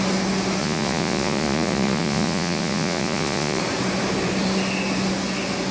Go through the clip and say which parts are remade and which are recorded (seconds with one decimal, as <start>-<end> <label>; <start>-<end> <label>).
0.0-0.6 recorded; 0.6-3.6 remade; 3.6-5.7 recorded